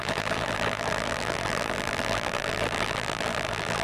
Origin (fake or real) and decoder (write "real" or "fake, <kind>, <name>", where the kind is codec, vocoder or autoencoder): fake, vocoder, BigVGAN v2